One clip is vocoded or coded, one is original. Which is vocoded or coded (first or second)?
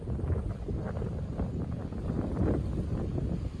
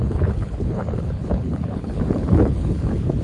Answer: second